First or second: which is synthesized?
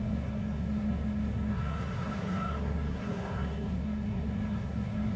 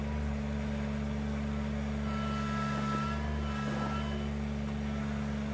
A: first